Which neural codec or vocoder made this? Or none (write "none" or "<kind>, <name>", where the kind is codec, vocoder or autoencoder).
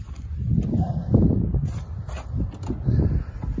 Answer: none